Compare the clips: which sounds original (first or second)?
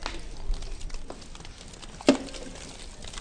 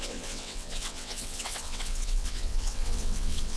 first